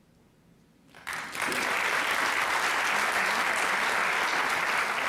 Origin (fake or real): real